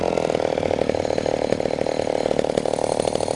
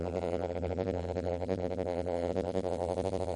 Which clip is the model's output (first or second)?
second